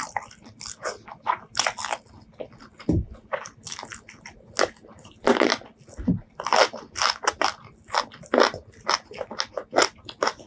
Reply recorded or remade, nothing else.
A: recorded